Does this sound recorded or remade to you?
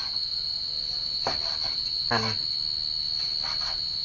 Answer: recorded